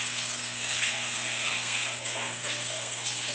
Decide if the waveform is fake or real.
fake